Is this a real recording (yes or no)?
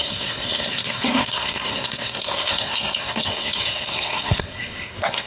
no